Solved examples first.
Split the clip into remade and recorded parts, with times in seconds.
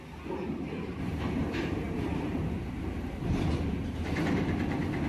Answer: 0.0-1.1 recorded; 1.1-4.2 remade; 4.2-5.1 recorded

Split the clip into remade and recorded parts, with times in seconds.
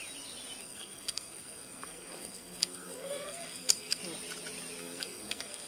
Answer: 0.0-0.6 recorded; 0.6-4.0 remade; 4.0-4.8 recorded; 4.8-5.7 remade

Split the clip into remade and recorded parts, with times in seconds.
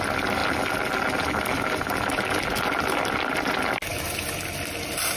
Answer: 0.0-5.2 recorded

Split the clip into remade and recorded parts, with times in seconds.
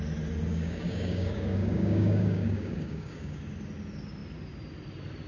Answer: 0.0-0.5 recorded; 0.5-3.4 remade; 3.4-5.3 recorded